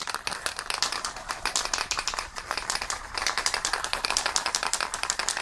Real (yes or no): no